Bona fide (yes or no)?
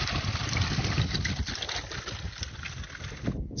yes